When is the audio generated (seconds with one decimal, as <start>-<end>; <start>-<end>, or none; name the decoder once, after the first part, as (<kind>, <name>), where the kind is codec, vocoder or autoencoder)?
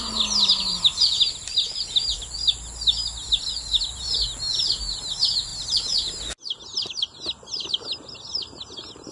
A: none